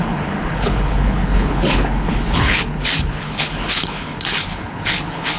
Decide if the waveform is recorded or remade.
remade